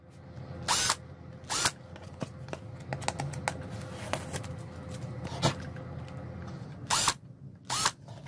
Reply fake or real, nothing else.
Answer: real